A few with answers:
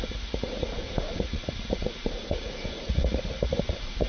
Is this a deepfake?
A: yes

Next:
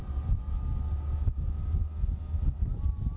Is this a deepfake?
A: no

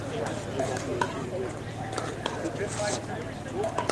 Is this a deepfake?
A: no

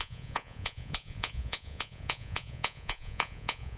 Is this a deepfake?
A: yes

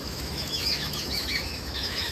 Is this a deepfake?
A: yes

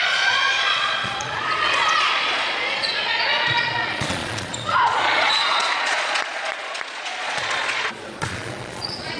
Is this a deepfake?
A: yes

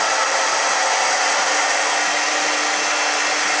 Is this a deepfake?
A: no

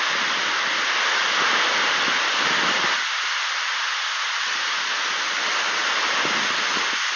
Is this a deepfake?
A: no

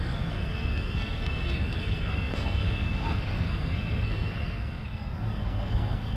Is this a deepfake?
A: yes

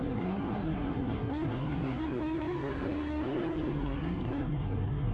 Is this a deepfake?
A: yes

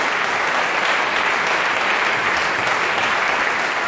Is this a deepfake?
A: no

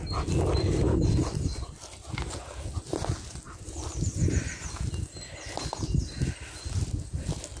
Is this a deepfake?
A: no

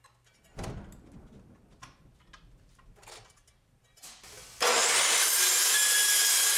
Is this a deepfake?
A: no